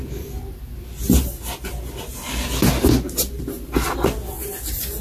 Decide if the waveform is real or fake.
real